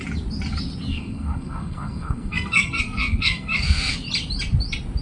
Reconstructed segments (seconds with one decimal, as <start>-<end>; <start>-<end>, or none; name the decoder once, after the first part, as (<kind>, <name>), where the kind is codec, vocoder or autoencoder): 0.9-3.9 (codec, SNAC)